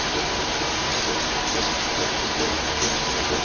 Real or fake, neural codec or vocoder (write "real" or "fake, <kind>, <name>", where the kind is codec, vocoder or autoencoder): real